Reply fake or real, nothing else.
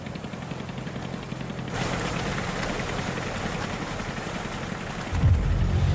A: real